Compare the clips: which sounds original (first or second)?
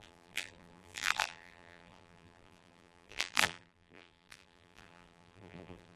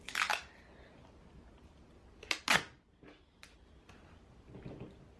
second